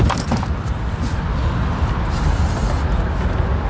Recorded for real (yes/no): yes